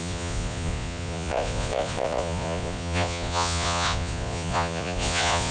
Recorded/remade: remade